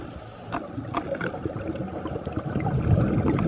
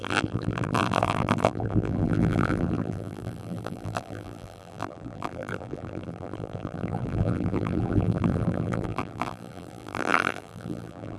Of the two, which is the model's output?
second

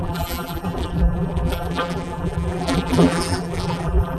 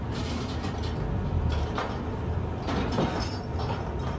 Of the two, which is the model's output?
first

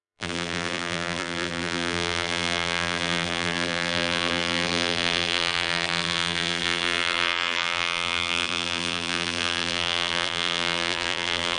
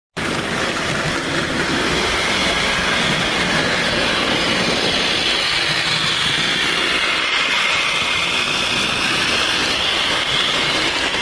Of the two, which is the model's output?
first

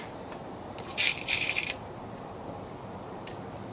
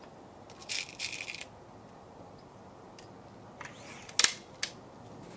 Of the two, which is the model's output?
first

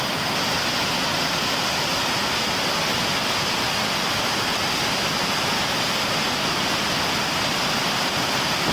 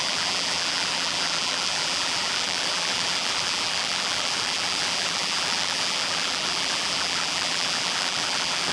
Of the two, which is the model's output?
second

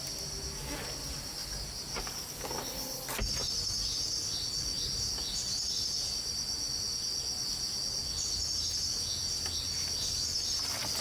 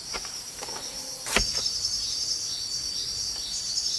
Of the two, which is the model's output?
second